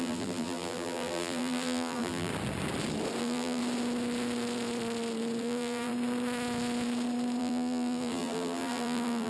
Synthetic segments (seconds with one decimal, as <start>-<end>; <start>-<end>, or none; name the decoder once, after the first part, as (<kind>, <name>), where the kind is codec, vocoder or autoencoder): 0.0-2.3 (vocoder, BigVGAN v2); 3.2-3.6; 5.4-5.9; 7.4-9.3